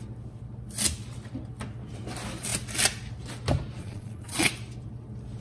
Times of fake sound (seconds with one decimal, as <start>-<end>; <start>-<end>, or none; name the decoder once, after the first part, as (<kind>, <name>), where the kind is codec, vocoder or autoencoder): 3.8-4.5 (vocoder, Vocos)